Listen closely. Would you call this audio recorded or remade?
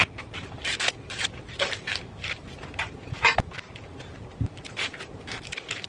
remade